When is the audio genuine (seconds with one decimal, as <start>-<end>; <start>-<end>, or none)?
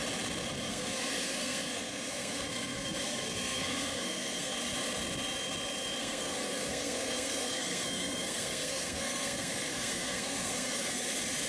0.0-0.7; 4.5-6.0; 11.1-11.5